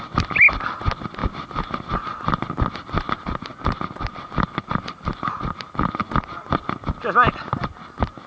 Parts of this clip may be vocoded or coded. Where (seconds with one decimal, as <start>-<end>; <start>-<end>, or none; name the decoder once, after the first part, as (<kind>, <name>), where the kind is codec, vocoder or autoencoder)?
3.5-6.5 (vocoder, BigVGAN v2)